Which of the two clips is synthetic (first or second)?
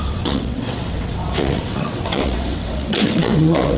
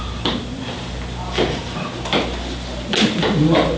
first